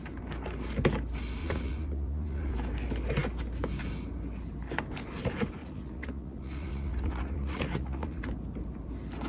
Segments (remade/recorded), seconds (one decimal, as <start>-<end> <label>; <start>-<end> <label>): 0.0-1.4 recorded; 1.4-2.5 remade; 2.5-5.6 recorded; 5.6-8.2 remade; 8.2-9.3 recorded